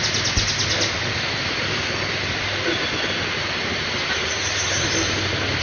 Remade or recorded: recorded